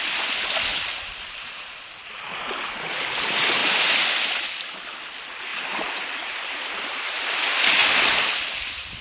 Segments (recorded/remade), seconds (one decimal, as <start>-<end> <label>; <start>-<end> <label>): 0.0-0.7 recorded; 0.7-1.7 remade; 1.7-5.5 recorded; 5.5-7.2 remade; 7.2-9.0 recorded